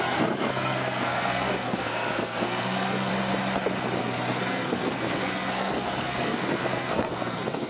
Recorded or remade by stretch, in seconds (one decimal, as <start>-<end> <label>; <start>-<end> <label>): 0.0-3.1 remade; 3.1-4.0 recorded; 4.0-7.7 remade